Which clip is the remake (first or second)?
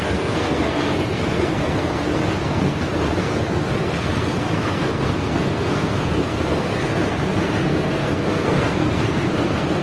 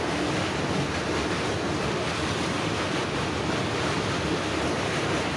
first